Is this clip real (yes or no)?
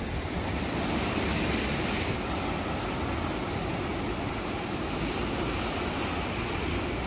yes